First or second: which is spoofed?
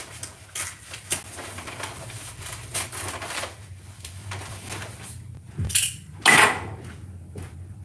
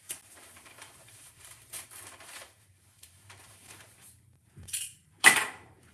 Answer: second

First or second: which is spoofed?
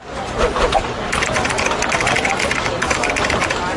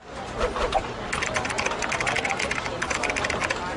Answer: first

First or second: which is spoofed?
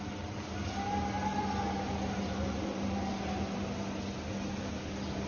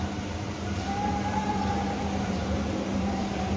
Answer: second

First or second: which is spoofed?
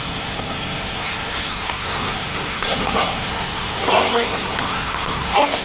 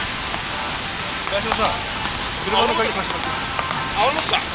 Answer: first